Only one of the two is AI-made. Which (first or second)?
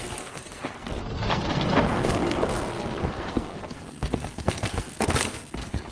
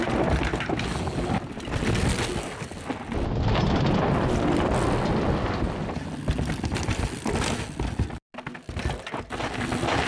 first